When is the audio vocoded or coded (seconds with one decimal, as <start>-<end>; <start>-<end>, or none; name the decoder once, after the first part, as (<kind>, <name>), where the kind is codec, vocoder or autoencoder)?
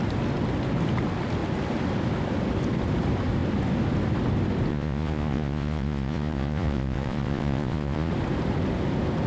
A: 4.7-8.1 (vocoder, Vocos)